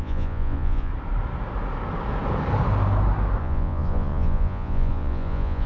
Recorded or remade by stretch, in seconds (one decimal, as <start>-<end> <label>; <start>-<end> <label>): 0.0-0.9 remade; 0.9-3.4 recorded; 3.4-5.7 remade